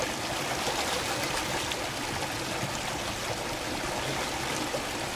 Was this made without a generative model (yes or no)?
yes